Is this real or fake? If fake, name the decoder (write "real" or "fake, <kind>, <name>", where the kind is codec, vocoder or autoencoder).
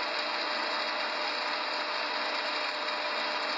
real